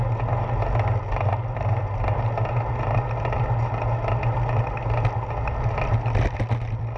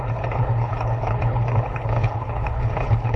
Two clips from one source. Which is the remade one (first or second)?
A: second